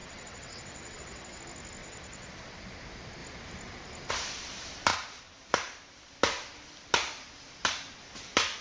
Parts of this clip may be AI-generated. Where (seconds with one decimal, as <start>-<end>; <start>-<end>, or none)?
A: 0.0-1.4; 1.8-2.6